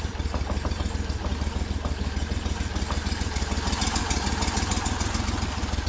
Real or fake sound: real